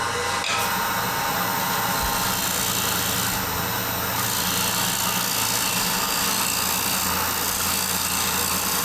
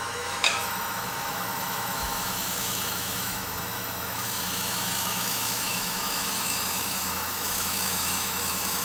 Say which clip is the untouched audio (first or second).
first